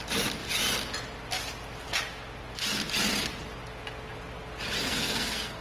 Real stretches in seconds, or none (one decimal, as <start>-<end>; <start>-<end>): 0.0-4.8